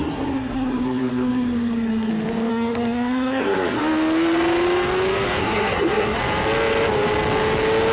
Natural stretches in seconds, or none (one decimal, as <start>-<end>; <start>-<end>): 2.1-2.5; 3.8-5.4; 6.2-7.9